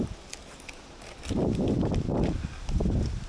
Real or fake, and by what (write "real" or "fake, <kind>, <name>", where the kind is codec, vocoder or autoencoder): real